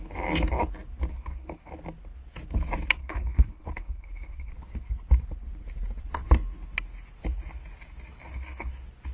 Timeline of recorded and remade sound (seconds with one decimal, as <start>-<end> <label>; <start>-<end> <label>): 0.0-1.1 recorded; 1.1-1.7 remade; 1.7-3.0 recorded; 3.0-4.5 remade; 4.5-8.2 recorded; 8.2-8.7 remade; 8.7-9.1 recorded